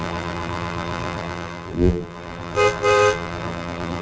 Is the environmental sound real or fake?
fake